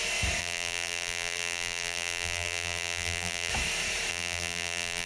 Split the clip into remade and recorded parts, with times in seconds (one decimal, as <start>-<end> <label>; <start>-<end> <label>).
0.0-0.4 recorded; 0.4-3.5 remade; 3.5-4.1 recorded; 4.1-5.1 remade